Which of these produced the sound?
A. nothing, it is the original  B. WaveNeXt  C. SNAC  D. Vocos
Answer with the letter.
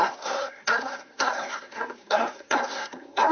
C